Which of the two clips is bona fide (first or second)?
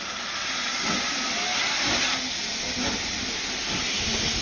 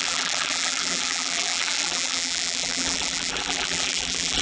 first